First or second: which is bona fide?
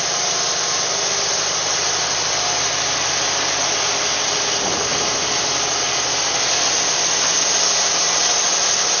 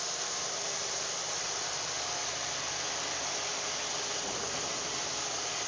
first